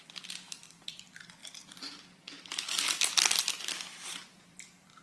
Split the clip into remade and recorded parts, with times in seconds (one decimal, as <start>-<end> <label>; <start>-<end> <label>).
0.0-5.0 recorded